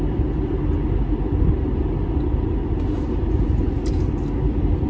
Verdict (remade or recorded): recorded